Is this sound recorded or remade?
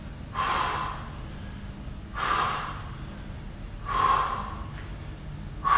recorded